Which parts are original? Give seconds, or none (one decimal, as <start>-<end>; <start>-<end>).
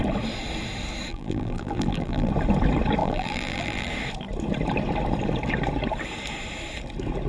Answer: 0.0-1.1; 2.3-3.0; 3.9-7.3